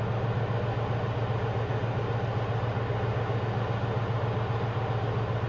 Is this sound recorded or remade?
recorded